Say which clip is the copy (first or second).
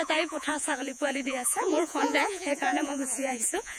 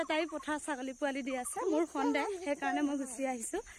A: first